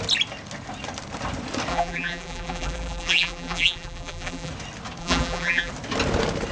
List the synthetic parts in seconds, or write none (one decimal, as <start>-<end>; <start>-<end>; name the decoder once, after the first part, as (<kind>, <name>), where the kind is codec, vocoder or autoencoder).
1.7-4.5 (vocoder, BigVGAN v2); 5.0-5.7